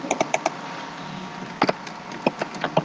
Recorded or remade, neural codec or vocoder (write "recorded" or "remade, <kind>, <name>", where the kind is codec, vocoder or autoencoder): recorded